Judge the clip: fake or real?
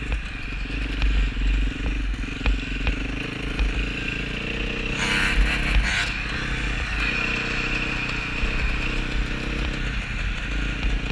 real